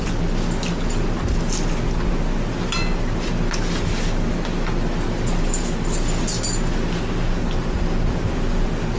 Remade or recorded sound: recorded